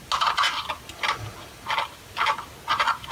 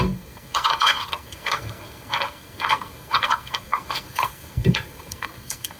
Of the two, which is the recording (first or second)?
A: first